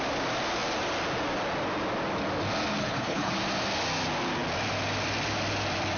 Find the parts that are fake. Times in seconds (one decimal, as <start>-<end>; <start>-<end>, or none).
2.8-3.3